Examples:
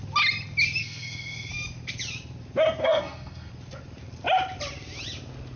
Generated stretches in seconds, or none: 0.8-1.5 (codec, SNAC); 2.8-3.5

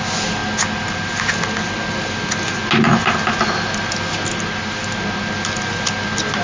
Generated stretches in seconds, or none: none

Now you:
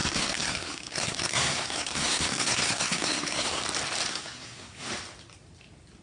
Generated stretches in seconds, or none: 0.0-3.6 (codec, SNAC); 4.1-4.9

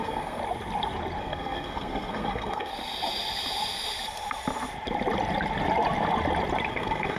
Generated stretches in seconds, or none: 0.0-0.4 (codec, SNAC); 1.2-2.7; 6.7-7.2

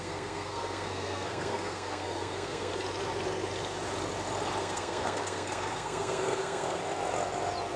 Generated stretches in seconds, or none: 0.0-2.7 (codec, SNAC); 4.6-6.8